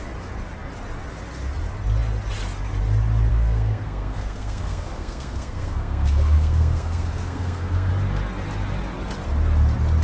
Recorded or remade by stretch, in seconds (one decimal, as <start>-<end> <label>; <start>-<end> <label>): 0.0-3.3 recorded; 3.3-7.9 remade; 7.9-10.0 recorded

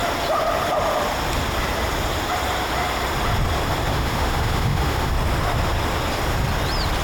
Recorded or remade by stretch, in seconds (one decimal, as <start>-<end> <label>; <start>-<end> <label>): 0.0-3.9 recorded; 3.9-5.1 remade; 5.1-7.0 recorded